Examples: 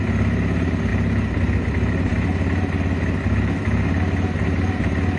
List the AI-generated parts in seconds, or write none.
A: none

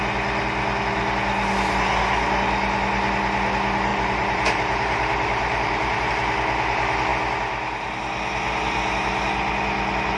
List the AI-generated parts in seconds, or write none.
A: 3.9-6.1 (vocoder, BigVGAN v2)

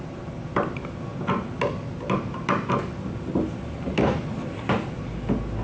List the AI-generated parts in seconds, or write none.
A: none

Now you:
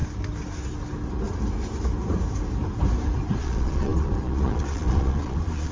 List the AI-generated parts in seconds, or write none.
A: 3.4-5.7 (vocoder, Vocos)